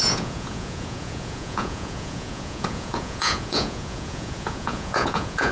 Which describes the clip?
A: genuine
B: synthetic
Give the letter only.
B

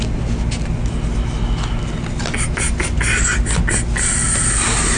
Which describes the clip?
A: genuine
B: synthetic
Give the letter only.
A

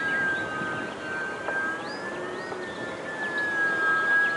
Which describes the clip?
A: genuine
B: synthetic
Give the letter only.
A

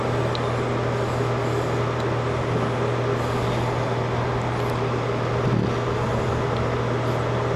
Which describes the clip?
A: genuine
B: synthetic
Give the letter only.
A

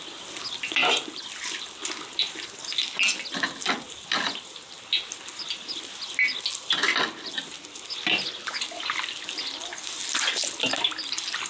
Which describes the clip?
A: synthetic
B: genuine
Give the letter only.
B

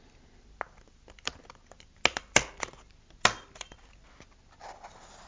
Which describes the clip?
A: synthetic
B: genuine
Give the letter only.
B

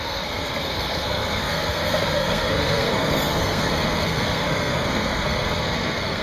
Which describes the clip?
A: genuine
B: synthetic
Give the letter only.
B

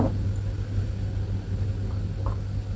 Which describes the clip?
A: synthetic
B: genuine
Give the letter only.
B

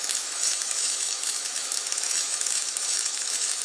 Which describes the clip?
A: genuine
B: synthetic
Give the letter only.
B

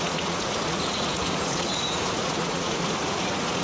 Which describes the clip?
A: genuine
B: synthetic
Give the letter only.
B